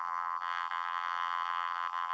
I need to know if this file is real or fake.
fake